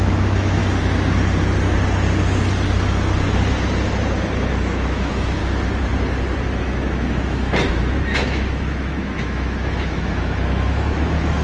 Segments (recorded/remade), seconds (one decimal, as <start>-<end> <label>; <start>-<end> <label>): 0.0-0.6 remade; 0.6-4.5 recorded; 4.5-5.4 remade; 5.4-6.6 recorded; 6.6-11.4 remade